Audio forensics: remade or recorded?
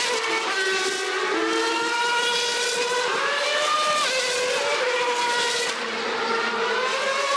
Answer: recorded